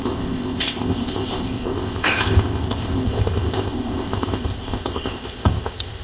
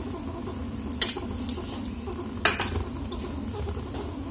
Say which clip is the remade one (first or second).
first